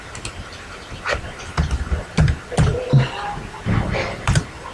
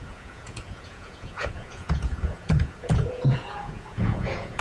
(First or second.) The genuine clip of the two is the first